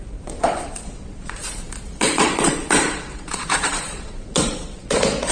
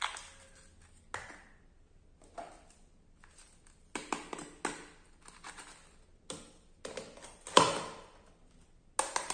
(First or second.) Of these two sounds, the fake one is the first